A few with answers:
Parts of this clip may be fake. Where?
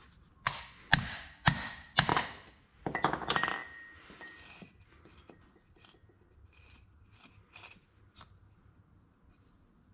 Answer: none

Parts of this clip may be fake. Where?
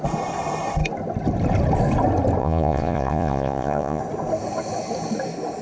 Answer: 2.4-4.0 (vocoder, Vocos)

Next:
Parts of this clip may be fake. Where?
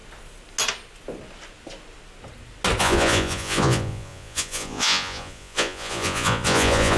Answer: 2.8-7.0 (vocoder, Vocos)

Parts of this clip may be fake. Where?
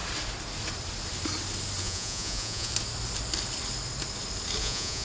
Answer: 1.8-2.7 (vocoder, Vocos); 4.6-5.0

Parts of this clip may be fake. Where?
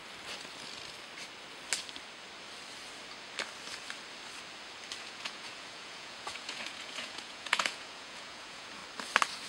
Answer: 5.0-8.8 (vocoder, Vocos)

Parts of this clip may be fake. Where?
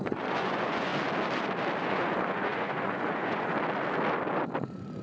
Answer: 0.0-0.9 (vocoder, Vocos); 1.9-3.5; 4.6-5.0